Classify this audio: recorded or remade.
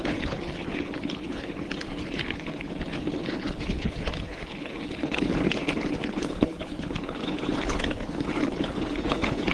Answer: remade